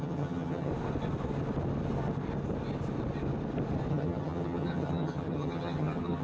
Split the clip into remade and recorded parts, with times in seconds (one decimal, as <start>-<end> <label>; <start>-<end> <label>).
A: 0.0-0.7 remade; 0.7-3.9 recorded; 3.9-6.2 remade